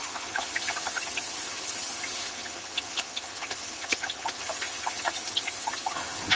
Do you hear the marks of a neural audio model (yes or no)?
yes